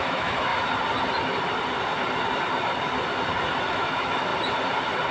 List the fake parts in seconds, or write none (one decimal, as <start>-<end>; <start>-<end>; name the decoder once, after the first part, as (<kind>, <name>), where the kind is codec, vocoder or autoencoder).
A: 0.0-0.5 (autoencoder, DAC-VAE); 3.6-4.3